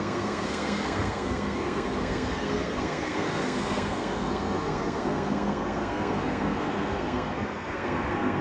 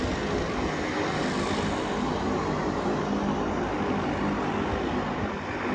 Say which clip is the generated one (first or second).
first